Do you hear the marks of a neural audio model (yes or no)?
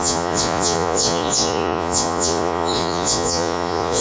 yes